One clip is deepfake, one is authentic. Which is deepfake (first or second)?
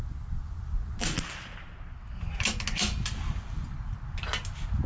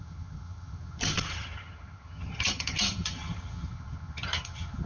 second